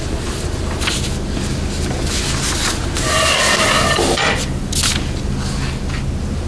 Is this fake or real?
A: real